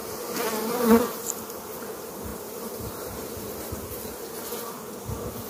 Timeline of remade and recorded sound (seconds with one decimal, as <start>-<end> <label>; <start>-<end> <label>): 0.0-2.3 recorded; 2.3-3.8 remade; 3.8-5.5 recorded